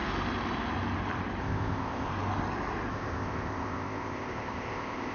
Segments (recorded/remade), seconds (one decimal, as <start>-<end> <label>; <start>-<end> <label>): 0.0-1.4 recorded; 1.4-2.1 remade; 2.1-2.9 recorded; 2.9-5.1 remade